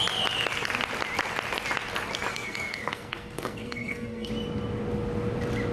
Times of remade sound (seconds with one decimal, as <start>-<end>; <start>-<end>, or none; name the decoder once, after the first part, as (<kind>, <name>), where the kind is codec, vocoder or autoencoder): 2.3-4.3 (codec, SNAC)